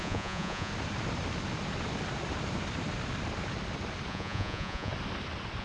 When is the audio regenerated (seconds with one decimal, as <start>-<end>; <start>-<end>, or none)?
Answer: 0.0-0.7; 4.1-4.9

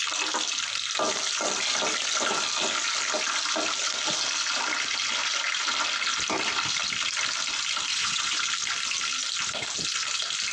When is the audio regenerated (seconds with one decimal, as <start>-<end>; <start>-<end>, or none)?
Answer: 7.9-8.4

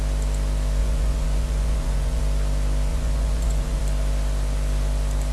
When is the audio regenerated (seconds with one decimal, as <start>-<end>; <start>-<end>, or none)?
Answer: 0.8-2.2; 2.9-3.8